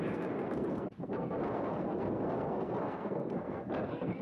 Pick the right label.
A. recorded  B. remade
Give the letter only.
B